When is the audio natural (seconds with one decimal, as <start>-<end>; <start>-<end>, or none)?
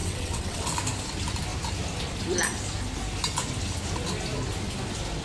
0.7-5.2